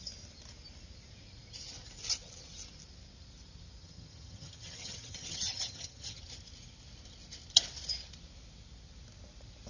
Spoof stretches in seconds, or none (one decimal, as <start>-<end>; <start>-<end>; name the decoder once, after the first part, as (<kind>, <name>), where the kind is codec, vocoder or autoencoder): 3.8-6.2 (vocoder, HiFi-GAN)